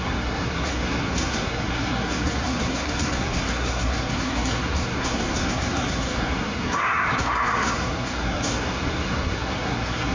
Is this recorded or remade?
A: remade